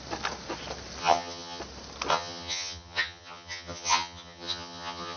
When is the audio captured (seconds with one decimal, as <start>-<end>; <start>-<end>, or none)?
0.0-1.0; 1.6-2.1